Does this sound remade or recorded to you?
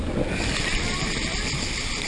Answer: recorded